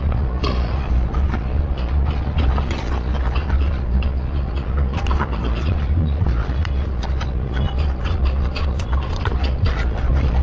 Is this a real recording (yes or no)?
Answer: no